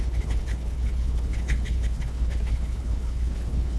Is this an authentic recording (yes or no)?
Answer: no